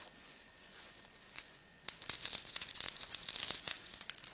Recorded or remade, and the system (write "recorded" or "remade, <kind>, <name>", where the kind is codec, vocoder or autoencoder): remade, vocoder, Vocos